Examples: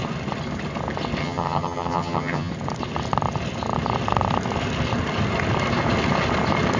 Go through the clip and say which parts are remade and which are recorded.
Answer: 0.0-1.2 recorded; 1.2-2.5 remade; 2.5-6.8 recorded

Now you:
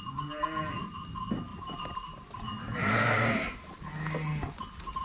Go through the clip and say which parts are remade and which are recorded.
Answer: 0.0-1.5 recorded; 1.5-3.8 remade; 3.8-5.0 recorded

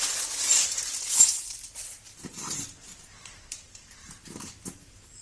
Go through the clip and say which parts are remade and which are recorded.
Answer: 0.0-0.8 remade; 0.8-1.8 recorded; 1.8-5.2 remade

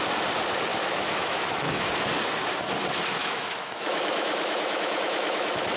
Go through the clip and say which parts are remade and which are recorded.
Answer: 0.0-0.7 recorded; 0.7-1.9 remade; 1.9-3.2 recorded; 3.2-5.8 remade

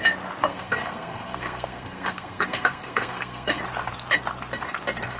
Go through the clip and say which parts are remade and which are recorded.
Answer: 0.0-0.5 recorded; 0.5-3.6 remade; 3.6-5.2 recorded